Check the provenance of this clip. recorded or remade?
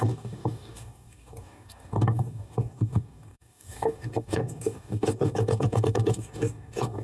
remade